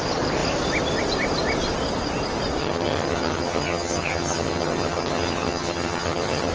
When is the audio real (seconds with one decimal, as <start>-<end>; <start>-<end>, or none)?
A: 0.0-2.6